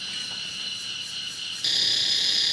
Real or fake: fake